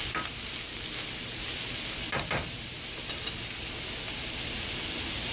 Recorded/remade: recorded